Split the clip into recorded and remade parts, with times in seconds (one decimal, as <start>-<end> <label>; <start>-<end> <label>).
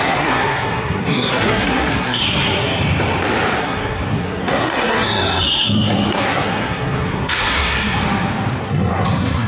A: 0.0-2.7 remade; 2.7-3.6 recorded; 3.6-8.0 remade; 8.0-8.6 recorded; 8.6-9.5 remade